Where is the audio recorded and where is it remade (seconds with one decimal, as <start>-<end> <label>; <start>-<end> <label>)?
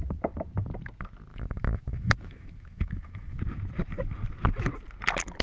0.0-1.3 recorded; 1.3-3.4 remade; 3.4-5.4 recorded